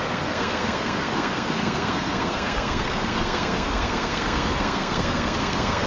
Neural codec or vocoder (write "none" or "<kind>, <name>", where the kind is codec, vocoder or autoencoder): codec, SNAC